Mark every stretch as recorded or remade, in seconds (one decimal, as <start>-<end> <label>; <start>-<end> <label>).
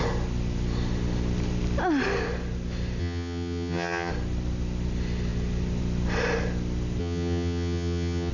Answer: 0.0-3.0 recorded; 3.0-4.1 remade; 4.1-7.0 recorded; 7.0-8.3 remade